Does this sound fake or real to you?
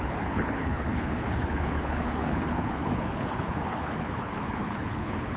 fake